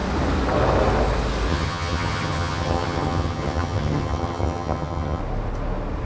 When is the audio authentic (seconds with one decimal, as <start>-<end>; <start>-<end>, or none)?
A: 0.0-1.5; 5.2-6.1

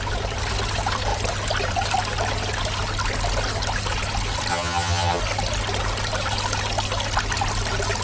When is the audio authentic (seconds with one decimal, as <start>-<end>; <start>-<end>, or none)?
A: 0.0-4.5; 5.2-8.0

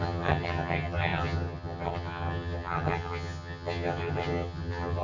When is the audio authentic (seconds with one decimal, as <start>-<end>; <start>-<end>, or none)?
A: none

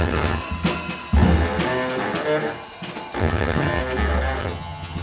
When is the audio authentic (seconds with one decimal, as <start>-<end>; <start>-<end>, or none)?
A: 0.4-3.2; 3.8-4.4

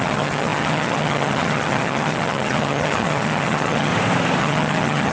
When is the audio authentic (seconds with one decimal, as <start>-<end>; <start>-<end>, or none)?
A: 3.9-4.4